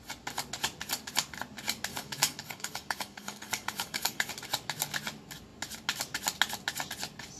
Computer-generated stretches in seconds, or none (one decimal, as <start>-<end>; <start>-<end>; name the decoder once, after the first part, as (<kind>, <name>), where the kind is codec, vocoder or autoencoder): 1.9-4.3 (codec, DAC)